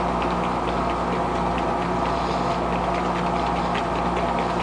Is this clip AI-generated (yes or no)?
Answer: no